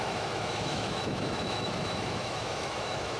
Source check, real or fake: fake